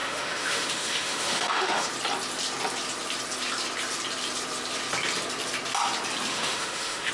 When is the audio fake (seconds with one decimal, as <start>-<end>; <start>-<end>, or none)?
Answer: 0.0-1.9; 6.3-7.1

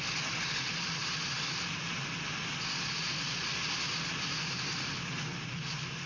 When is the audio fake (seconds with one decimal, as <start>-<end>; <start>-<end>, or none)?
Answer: none

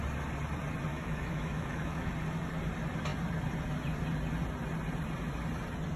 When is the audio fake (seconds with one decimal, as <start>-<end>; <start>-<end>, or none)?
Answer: 0.9-2.1

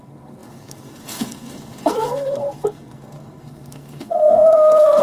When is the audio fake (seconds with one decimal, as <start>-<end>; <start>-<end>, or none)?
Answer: 0.0-5.0

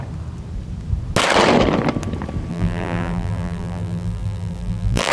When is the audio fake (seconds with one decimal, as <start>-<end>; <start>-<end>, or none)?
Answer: 2.5-5.1

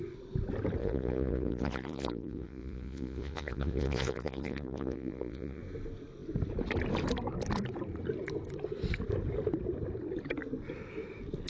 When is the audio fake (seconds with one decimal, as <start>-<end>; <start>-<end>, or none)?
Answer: 0.8-5.6

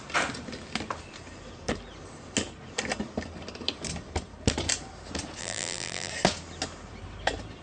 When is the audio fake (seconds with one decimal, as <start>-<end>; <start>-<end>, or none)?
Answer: 5.4-6.1

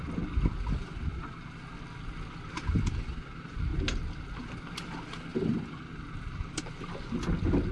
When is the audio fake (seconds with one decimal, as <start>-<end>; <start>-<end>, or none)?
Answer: none